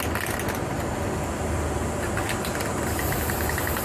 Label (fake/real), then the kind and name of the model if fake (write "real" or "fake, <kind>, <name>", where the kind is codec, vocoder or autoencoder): real